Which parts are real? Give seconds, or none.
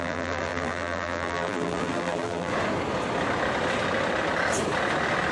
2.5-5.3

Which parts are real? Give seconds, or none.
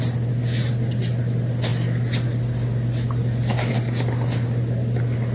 0.0-5.3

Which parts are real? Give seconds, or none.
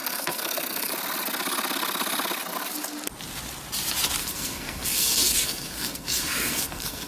0.9-4.2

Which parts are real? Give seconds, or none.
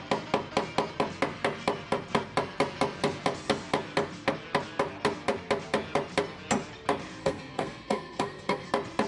0.0-7.2; 8.7-9.1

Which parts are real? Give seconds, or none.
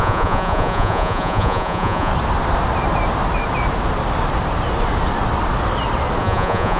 2.1-6.2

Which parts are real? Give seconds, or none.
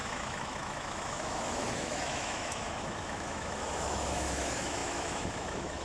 none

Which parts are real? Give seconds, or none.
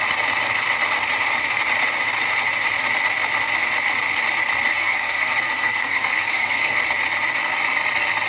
0.0-4.7; 6.8-8.3